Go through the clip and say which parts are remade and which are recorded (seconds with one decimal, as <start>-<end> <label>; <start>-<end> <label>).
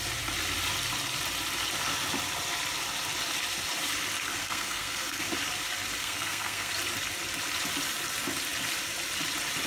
0.0-4.4 recorded; 4.4-5.2 remade; 5.2-6.0 recorded; 6.0-6.7 remade; 6.7-9.7 recorded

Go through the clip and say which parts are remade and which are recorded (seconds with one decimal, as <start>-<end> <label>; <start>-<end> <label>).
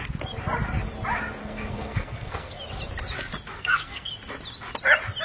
0.0-1.4 recorded; 1.4-2.6 remade; 2.6-3.5 recorded; 3.5-4.1 remade; 4.1-5.2 recorded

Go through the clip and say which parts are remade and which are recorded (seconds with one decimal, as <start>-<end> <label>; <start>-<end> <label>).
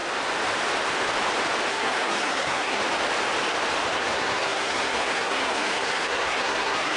0.0-1.7 recorded; 1.7-2.8 remade; 2.8-3.9 recorded; 3.9-7.0 remade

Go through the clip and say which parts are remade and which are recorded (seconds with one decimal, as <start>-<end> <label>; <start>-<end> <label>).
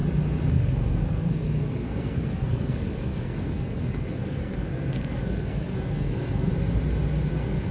0.0-0.5 recorded; 0.5-6.5 remade; 6.5-7.3 recorded; 7.3-7.7 remade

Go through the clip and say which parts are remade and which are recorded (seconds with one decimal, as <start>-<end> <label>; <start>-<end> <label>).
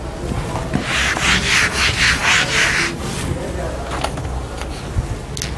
0.0-5.6 recorded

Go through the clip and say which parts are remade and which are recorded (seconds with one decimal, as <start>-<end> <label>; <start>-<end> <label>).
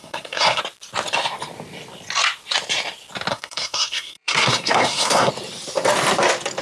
0.0-0.6 remade; 0.6-3.3 recorded; 3.3-5.3 remade; 5.3-6.6 recorded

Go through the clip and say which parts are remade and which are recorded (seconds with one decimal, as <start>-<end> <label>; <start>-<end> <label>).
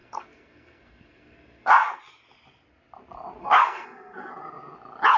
0.0-2.0 remade; 2.0-3.4 recorded; 3.4-4.3 remade; 4.3-5.2 recorded